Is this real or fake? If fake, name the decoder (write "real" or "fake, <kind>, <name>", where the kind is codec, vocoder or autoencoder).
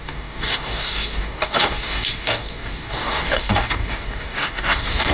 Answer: fake, codec, DAC